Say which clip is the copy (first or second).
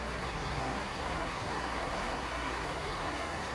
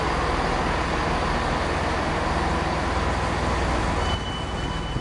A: first